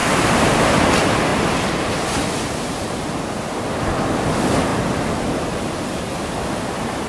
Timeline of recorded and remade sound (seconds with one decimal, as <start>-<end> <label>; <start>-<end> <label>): 0.0-0.6 remade; 0.6-4.7 recorded; 4.7-6.6 remade; 6.6-7.1 recorded